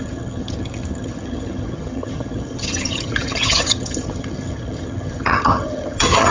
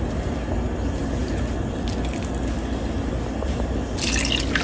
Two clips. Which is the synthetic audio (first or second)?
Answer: first